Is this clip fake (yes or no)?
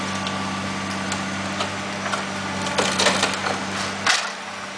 no